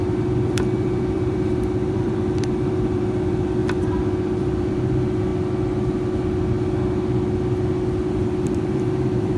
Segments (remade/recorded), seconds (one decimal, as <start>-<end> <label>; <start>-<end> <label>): 0.0-3.6 remade; 3.6-4.4 recorded; 4.4-5.3 remade; 5.3-8.1 recorded; 8.1-9.4 remade